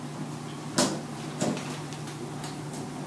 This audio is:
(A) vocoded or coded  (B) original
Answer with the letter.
B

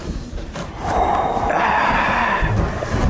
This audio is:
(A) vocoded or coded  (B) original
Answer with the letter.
A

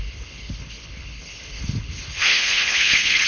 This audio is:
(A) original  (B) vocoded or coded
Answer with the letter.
B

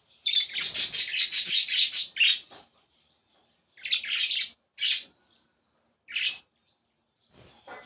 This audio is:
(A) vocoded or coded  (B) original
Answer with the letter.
B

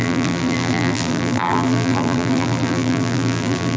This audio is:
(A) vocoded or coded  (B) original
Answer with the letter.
A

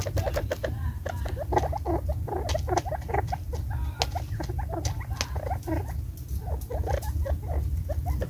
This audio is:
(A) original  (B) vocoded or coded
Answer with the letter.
A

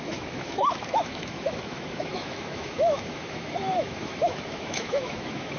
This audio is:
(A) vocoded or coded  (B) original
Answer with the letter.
A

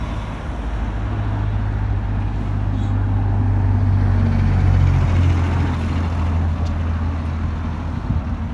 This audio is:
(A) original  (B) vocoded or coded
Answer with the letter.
A